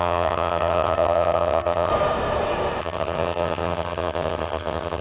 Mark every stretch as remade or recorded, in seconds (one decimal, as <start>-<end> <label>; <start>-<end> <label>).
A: 0.0-1.9 remade; 1.9-2.8 recorded; 2.8-5.0 remade